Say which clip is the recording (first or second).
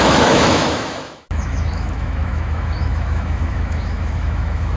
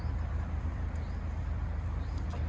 second